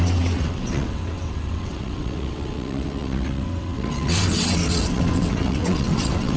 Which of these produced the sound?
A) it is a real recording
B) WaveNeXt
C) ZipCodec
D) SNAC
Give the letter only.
B